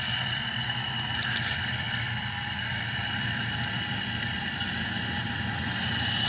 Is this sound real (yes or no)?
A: yes